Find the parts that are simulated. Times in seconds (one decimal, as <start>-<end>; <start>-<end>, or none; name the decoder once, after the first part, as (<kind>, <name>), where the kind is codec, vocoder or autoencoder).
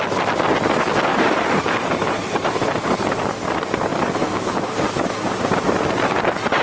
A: 1.1-3.2 (vocoder, BigVGAN v2); 3.9-4.9